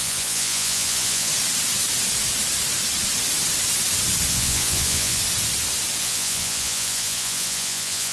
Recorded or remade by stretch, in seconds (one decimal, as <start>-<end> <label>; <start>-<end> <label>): 0.0-1.3 remade; 1.3-4.3 recorded; 4.3-5.2 remade; 5.2-6.0 recorded; 6.0-8.1 remade